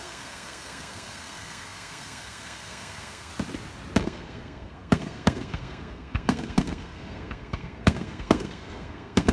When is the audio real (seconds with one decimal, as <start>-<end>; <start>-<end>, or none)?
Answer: 3.3-4.0